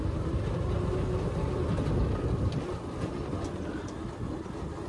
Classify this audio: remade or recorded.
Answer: recorded